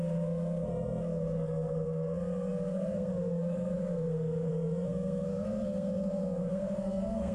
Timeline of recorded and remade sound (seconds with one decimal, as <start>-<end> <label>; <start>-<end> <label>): 0.0-7.3 remade